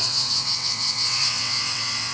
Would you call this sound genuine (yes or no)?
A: no